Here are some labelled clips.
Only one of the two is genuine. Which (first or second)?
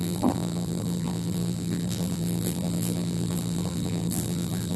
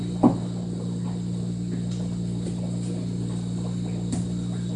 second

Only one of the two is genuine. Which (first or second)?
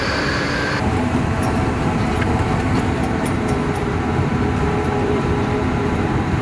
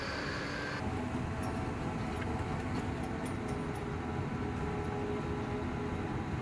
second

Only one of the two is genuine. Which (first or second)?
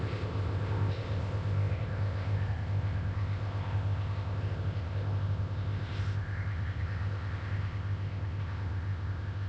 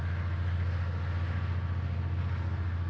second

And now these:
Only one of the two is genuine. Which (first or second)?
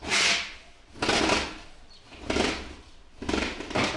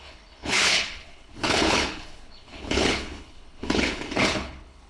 first